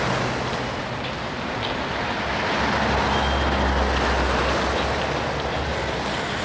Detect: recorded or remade recorded